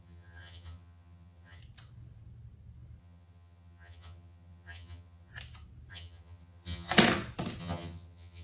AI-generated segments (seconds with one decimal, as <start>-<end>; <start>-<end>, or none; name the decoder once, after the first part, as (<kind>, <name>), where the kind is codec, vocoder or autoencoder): 0.0-1.6 (vocoder, HiFi-GAN); 3.0-5.3; 5.9-6.9; 7.6-8.4